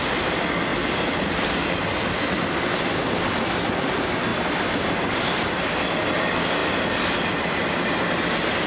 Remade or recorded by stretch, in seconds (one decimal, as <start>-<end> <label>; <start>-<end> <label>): 0.0-4.3 recorded; 4.3-5.9 remade; 5.9-8.7 recorded